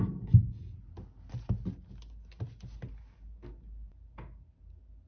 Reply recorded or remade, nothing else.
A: recorded